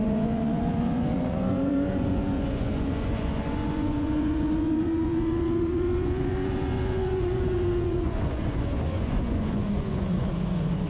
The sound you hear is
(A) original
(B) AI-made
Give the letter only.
B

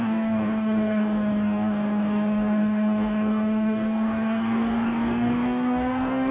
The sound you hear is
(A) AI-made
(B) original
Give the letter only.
A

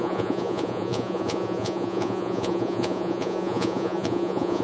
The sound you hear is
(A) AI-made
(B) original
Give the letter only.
A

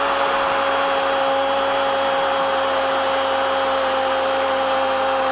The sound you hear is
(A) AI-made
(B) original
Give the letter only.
B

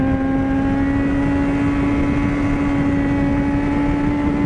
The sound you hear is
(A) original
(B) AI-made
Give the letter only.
A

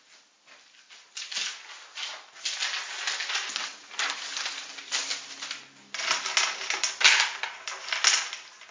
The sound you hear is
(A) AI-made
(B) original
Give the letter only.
B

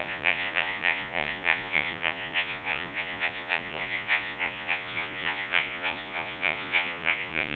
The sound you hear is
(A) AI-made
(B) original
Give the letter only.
A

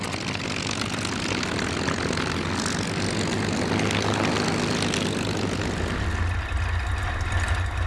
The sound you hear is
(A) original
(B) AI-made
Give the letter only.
A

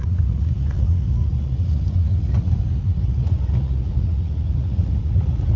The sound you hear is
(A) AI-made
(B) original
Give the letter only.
A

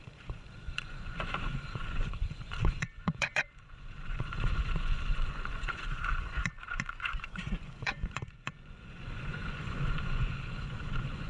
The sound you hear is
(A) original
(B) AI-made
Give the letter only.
B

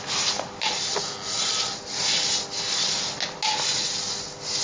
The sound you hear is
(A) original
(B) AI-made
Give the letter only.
A